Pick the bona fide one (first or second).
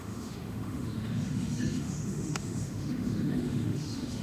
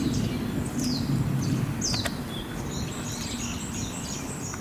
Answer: second